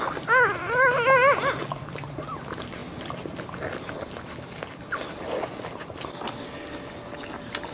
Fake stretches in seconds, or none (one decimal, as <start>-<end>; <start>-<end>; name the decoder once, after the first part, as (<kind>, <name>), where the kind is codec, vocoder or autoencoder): none